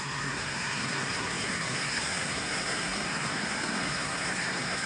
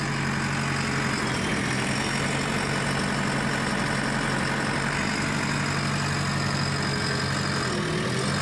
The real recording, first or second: second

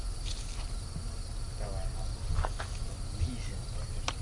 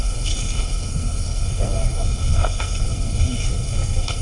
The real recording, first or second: first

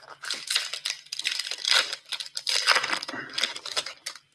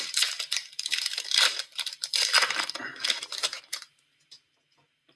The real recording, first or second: first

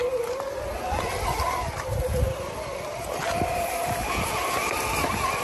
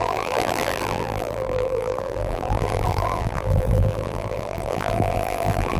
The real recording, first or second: first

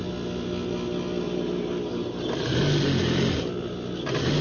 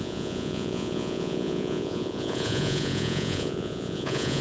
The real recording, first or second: first